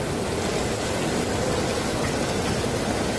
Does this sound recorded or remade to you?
recorded